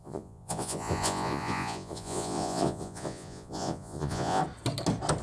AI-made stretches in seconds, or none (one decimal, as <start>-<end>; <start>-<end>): 0.0-4.4